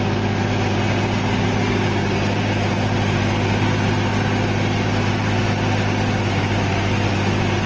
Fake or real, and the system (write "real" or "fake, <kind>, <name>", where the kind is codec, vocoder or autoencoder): real